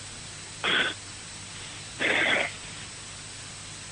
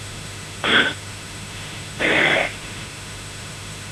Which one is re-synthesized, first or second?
second